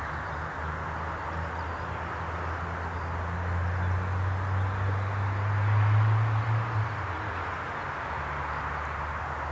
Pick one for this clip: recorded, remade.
recorded